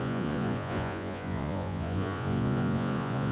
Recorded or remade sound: remade